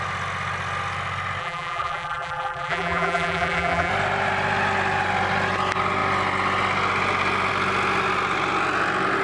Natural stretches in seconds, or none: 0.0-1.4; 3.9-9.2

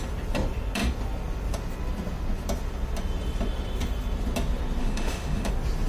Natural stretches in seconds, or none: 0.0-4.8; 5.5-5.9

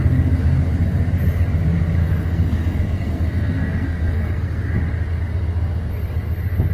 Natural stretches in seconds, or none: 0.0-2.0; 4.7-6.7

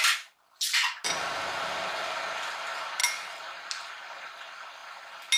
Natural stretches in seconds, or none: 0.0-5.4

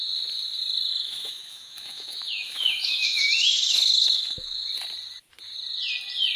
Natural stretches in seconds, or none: 0.0-0.9; 4.7-6.4